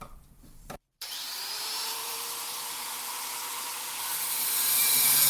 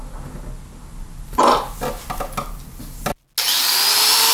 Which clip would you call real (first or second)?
second